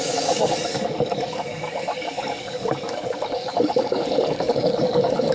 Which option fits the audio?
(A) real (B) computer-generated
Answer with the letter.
B